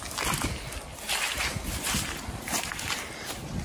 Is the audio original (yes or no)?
yes